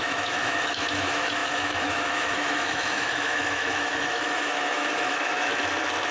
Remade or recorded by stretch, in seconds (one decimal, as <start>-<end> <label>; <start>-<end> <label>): 0.0-5.5 remade; 5.5-6.1 recorded